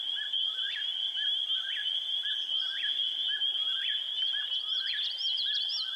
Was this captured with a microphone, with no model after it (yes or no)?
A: yes